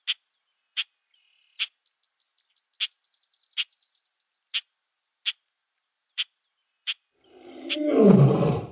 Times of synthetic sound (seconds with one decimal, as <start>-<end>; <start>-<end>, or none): none